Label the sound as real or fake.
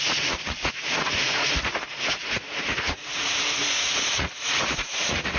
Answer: fake